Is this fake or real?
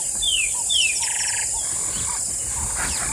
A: real